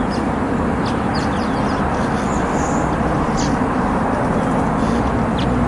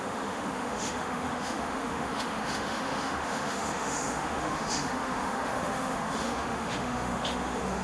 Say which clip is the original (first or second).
first